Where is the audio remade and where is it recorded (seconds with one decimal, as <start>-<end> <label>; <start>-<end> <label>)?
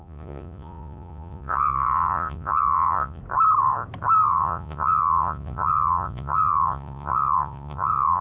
0.0-3.2 remade; 3.2-4.3 recorded; 4.3-8.2 remade